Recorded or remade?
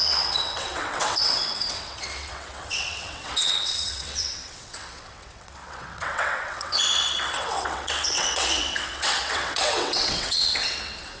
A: remade